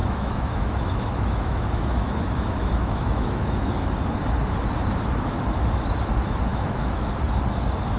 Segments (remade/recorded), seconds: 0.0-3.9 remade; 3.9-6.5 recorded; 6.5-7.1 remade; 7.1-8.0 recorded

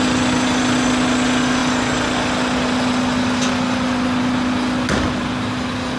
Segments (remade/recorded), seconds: 0.0-6.0 recorded

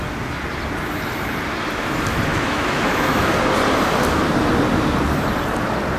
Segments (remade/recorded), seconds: 0.0-2.3 recorded; 2.3-3.3 remade; 3.3-6.0 recorded

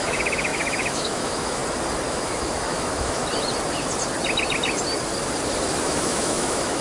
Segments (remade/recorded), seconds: 0.0-1.6 remade; 1.6-2.1 recorded; 2.1-3.2 remade; 3.2-5.8 recorded; 5.8-6.8 remade

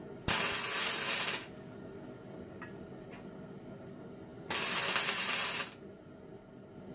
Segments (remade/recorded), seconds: 0.0-6.9 recorded

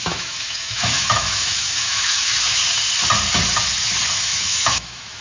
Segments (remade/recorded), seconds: 0.0-2.6 remade; 2.6-4.1 recorded; 4.1-5.2 remade

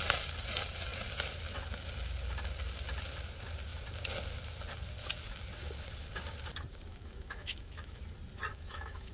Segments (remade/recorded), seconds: 0.0-6.9 recorded; 6.9-8.0 remade; 8.0-8.5 recorded; 8.5-9.1 remade

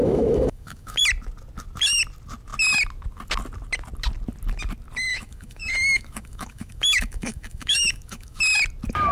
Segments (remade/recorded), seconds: 0.0-1.0 remade; 1.0-5.1 recorded; 5.1-8.4 remade; 8.4-9.1 recorded